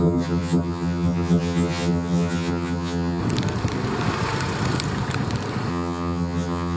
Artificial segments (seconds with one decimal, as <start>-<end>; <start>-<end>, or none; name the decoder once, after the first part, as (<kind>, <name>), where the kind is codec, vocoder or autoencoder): 0.0-3.2 (vocoder, HiFi-GAN); 5.7-6.8